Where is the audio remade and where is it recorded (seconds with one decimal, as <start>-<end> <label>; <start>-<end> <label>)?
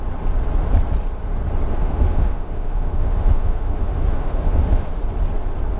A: 0.0-1.7 recorded; 1.7-5.0 remade; 5.0-5.8 recorded